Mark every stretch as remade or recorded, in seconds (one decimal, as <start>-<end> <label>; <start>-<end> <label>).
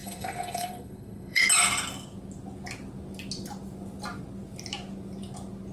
0.0-1.4 remade; 1.4-5.7 recorded